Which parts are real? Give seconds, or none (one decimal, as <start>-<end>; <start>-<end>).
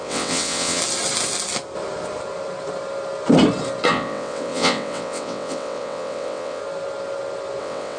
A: 0.8-3.9; 6.6-7.6